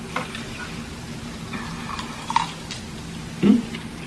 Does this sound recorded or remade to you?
recorded